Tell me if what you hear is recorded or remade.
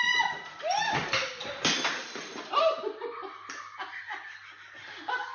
recorded